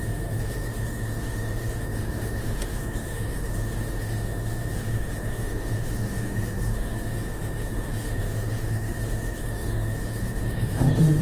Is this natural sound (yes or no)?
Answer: no